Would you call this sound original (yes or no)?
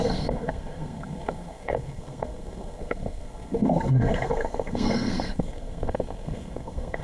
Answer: no